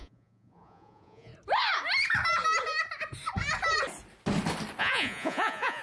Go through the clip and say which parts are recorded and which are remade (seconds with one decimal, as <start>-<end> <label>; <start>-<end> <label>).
0.0-1.3 remade; 1.3-4.8 recorded; 4.8-5.8 remade